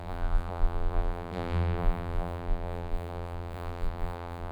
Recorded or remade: remade